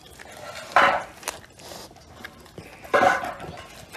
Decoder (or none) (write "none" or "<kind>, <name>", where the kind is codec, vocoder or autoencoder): none